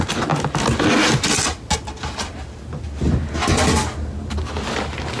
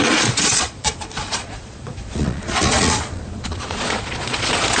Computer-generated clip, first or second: second